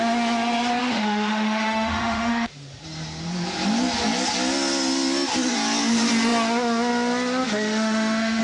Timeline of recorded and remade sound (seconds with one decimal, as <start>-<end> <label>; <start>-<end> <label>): 0.0-0.8 recorded; 0.8-2.5 remade; 2.5-7.4 recorded; 7.4-8.4 remade

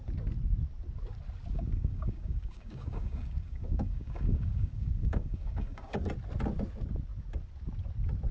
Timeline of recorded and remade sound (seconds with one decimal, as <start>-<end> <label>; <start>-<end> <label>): 0.0-1.5 recorded; 1.5-6.0 remade; 6.0-8.3 recorded

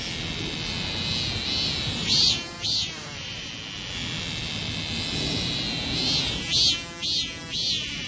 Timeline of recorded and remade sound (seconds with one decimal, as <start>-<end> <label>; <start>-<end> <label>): 0.0-2.0 recorded; 2.0-3.5 remade; 3.5-8.1 recorded

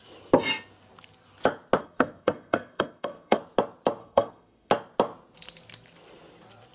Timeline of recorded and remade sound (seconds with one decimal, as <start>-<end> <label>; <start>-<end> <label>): 0.0-1.8 recorded; 1.8-3.4 remade; 3.4-4.0 recorded; 4.0-4.7 remade; 4.7-6.7 recorded

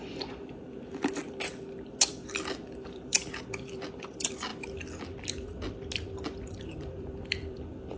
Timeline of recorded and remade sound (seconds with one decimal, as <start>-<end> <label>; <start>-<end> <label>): 0.0-1.2 remade; 1.2-2.1 recorded; 2.1-4.5 remade; 4.5-6.4 recorded; 6.4-8.0 remade